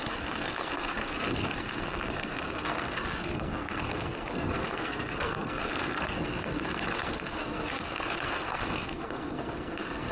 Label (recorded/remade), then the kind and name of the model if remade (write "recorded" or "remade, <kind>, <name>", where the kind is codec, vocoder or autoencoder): remade, codec, SNAC